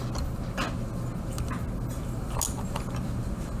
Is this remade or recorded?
recorded